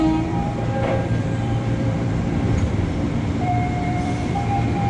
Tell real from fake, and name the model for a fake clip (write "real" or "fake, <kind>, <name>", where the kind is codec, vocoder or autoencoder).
fake, vocoder, BigVGAN v2